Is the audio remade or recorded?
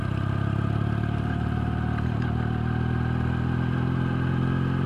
recorded